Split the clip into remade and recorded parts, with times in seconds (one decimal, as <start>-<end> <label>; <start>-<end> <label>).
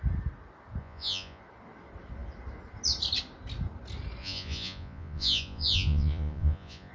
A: 0.0-0.8 recorded; 0.8-1.4 remade; 1.4-4.2 recorded; 4.2-6.9 remade